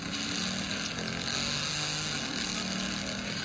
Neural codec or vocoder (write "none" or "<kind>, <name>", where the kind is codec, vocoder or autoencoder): none